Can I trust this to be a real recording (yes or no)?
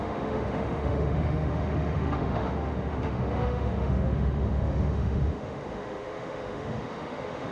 no